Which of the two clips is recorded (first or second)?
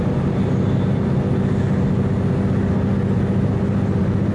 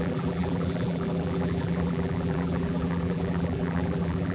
first